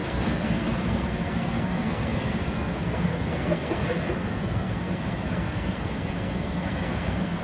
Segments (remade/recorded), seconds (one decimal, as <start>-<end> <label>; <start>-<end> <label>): 0.0-7.4 remade